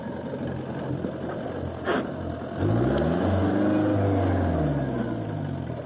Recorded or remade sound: recorded